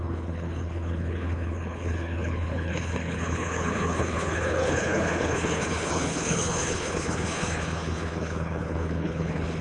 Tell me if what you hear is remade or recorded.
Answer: remade